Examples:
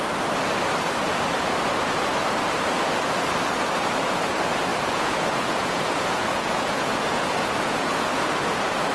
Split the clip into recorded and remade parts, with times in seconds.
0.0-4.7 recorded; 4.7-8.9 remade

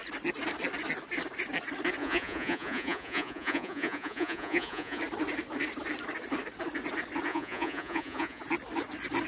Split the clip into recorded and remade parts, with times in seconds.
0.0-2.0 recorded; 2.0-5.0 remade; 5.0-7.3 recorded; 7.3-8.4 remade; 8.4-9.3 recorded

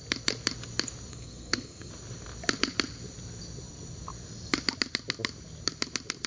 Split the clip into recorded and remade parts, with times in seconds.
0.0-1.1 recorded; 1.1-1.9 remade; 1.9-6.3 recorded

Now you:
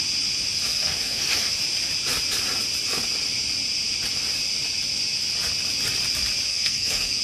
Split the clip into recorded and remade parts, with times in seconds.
0.0-0.7 recorded; 0.7-1.5 remade; 1.5-6.5 recorded; 6.5-7.2 remade

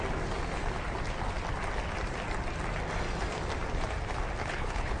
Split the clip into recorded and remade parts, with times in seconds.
0.0-4.4 recorded; 4.4-5.0 remade

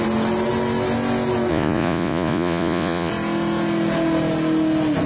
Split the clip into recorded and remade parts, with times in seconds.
0.0-1.5 recorded; 1.5-3.1 remade; 3.1-5.1 recorded

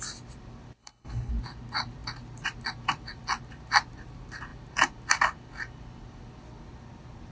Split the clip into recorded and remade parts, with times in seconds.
0.0-0.8 recorded; 0.8-1.3 remade; 1.3-7.3 recorded